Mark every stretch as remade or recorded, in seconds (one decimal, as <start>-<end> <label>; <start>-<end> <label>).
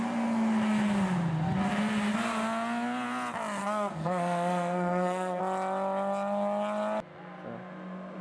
0.0-3.6 recorded; 3.6-5.4 remade; 5.4-8.2 recorded